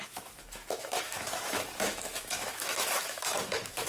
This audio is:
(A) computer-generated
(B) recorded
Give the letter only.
A